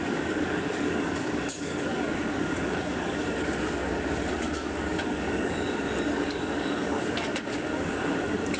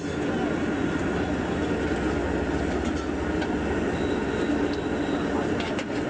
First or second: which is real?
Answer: second